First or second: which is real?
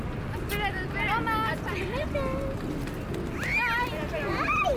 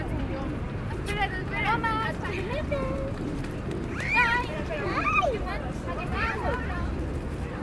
first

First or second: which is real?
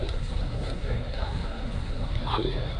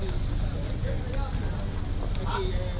second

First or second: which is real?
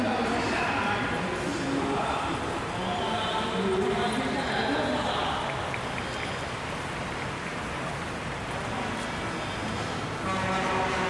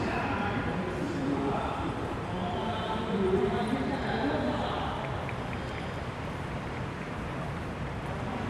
first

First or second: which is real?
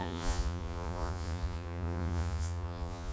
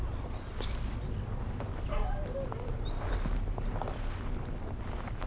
second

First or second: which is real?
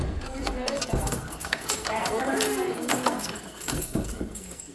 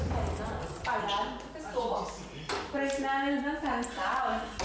second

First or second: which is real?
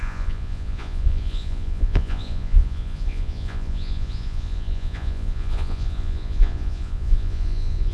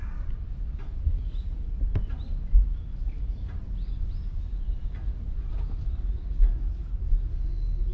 second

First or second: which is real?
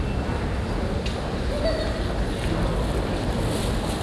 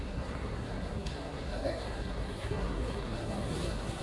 first